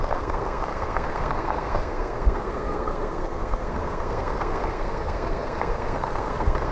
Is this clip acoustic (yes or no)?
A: no